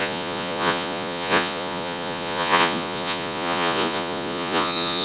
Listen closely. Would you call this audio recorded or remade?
remade